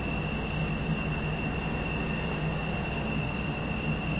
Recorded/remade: recorded